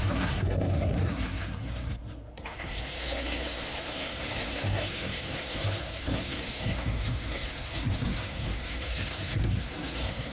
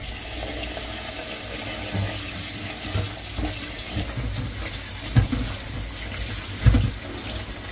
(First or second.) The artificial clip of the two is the first